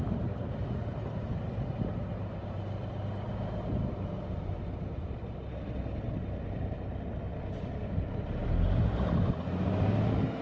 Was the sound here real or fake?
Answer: real